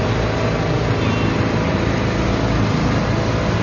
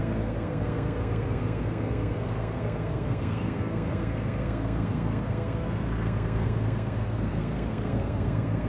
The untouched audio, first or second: first